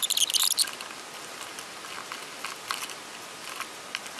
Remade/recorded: recorded